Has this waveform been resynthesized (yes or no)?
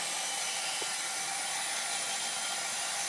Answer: yes